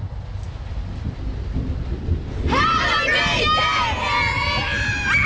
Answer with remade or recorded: recorded